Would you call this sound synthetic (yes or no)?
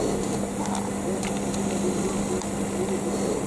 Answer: no